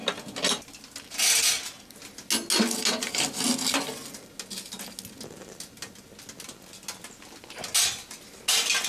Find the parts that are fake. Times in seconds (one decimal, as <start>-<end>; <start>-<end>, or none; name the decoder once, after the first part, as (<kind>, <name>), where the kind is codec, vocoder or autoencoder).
none